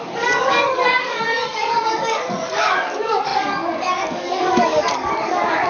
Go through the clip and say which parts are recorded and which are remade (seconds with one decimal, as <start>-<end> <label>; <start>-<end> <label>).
0.0-5.7 remade